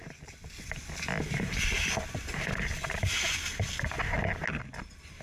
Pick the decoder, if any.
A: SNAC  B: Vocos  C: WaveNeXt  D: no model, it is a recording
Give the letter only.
D